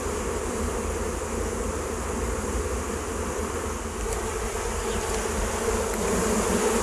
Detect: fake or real real